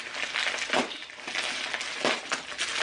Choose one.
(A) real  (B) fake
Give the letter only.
A